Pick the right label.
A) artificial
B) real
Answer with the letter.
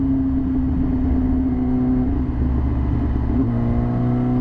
B